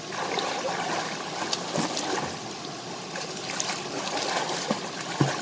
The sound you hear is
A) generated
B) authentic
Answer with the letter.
B